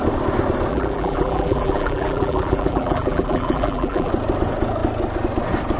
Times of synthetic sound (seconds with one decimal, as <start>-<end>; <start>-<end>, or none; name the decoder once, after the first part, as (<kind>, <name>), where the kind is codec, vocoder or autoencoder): 0.7-4.1 (vocoder, BigVGAN v2)